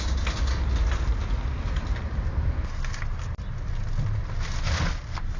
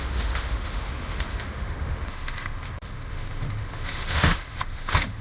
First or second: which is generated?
second